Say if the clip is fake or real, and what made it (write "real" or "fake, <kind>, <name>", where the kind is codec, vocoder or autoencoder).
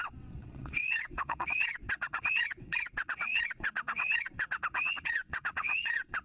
fake, vocoder, WaveNeXt